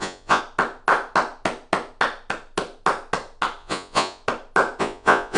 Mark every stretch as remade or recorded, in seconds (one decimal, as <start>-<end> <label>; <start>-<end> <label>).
0.0-0.4 remade; 0.4-3.6 recorded; 3.6-4.2 remade; 4.2-4.8 recorded; 4.8-5.4 remade

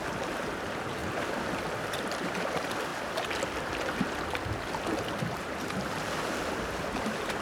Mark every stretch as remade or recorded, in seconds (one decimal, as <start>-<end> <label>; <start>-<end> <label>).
0.0-2.9 remade; 2.9-5.1 recorded; 5.1-7.4 remade

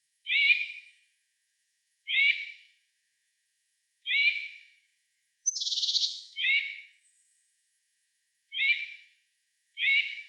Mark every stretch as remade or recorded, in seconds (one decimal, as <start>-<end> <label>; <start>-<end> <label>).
0.0-10.3 remade